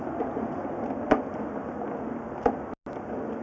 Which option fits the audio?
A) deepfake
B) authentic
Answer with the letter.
B